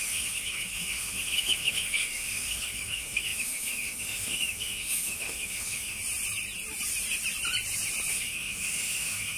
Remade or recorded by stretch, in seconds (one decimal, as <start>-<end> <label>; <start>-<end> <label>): 0.0-6.0 remade; 6.0-8.1 recorded; 8.1-9.4 remade